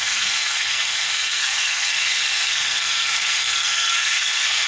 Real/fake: fake